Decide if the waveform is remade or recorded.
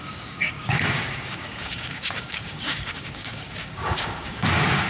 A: remade